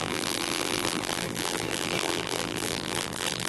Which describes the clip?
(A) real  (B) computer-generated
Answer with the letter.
B